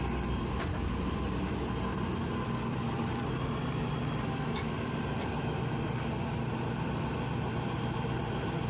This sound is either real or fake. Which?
fake